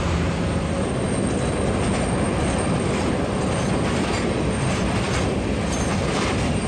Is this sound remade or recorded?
recorded